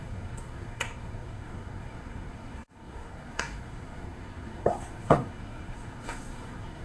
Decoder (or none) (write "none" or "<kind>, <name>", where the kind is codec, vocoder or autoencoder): codec, SNAC